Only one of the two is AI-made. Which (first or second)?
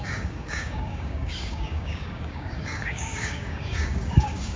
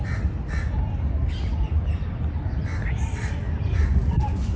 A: first